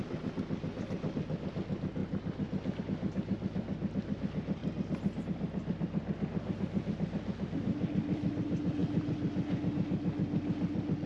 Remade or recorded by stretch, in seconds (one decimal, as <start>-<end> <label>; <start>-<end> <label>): 0.0-11.1 recorded